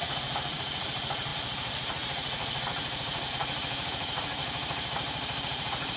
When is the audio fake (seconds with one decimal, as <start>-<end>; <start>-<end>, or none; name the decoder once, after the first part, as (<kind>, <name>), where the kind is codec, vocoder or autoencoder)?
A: 0.0-4.4 (vocoder, Vocos); 5.4-6.0

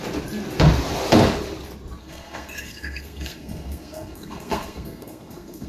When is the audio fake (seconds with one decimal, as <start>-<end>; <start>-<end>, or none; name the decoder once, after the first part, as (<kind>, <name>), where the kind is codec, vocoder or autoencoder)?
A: 2.0-5.7 (codec, SNAC)